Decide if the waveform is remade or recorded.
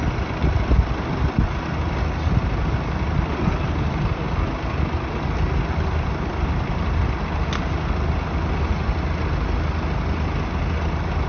recorded